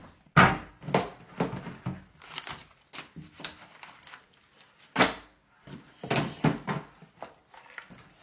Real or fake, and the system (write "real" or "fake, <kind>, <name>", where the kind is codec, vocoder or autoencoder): real